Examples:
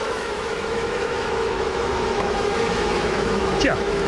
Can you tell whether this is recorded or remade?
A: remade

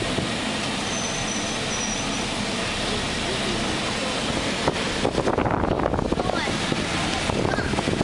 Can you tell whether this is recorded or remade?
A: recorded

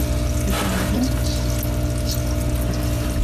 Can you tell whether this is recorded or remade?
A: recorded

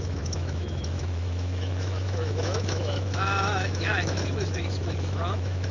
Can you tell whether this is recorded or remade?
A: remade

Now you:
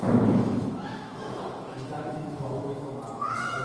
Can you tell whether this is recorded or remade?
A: remade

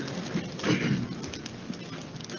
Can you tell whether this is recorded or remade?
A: recorded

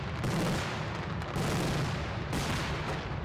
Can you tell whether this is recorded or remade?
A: recorded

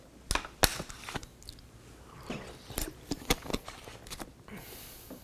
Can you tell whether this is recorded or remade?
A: recorded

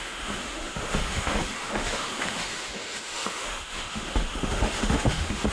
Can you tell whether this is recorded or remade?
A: remade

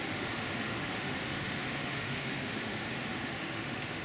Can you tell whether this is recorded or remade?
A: remade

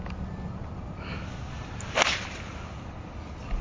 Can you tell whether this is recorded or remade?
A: recorded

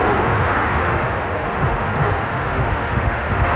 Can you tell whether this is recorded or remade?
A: remade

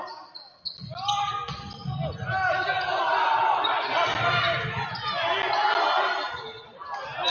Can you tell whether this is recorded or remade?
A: recorded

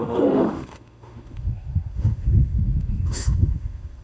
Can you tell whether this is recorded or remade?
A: remade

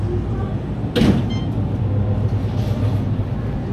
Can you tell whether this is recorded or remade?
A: recorded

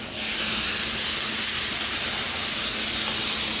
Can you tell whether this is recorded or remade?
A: recorded